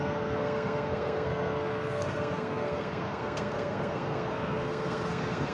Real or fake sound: fake